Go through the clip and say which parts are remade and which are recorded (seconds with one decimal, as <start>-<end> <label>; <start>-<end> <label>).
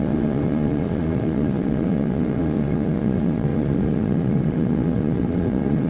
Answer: 0.0-5.9 remade